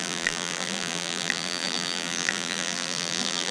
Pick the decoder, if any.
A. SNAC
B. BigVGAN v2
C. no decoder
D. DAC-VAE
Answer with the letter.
B